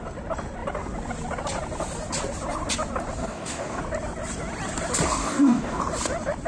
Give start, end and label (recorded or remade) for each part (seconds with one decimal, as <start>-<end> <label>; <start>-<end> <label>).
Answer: 0.0-3.2 recorded; 3.2-3.8 remade; 3.8-5.2 recorded; 5.2-5.8 remade; 5.8-6.5 recorded